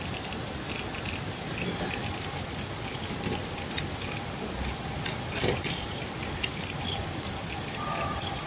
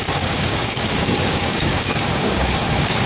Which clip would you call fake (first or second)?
second